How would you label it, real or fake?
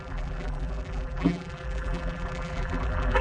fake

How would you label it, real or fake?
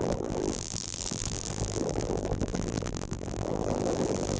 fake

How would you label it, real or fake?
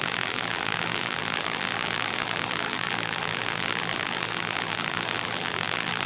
fake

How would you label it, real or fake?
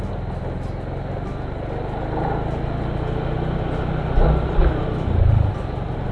real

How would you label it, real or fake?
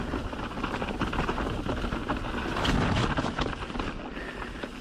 real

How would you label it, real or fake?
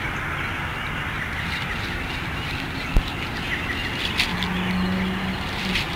real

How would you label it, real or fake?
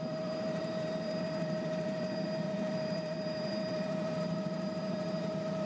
fake